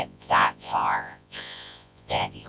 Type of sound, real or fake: fake